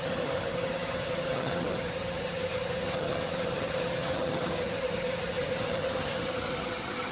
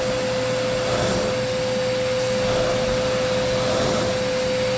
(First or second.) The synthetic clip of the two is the first